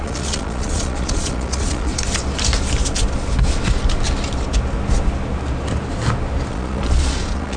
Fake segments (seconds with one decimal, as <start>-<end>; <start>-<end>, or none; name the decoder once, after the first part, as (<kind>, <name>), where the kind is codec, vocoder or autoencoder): 0.0-1.9 (vocoder, Vocos); 6.5-7.6